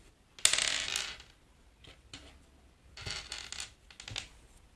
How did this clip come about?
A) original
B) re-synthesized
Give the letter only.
A